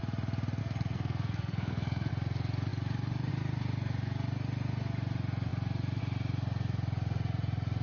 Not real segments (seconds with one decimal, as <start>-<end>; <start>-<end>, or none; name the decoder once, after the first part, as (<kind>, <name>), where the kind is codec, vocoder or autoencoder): 0.6-2.1 (codec, SNAC)